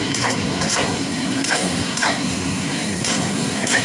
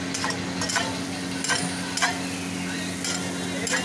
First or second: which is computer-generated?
first